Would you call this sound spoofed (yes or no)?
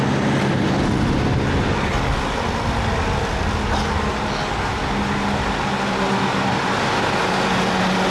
no